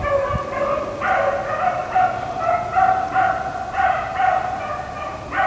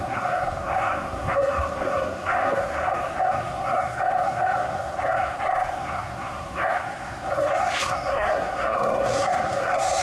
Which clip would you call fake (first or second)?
second